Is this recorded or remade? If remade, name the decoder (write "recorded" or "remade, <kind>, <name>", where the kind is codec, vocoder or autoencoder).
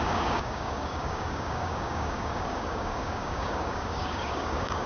remade, codec, DAC